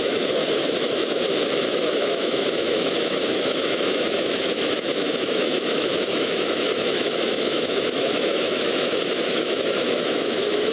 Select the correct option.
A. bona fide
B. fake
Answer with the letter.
B